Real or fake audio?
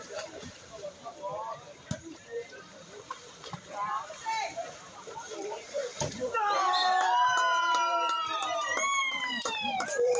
fake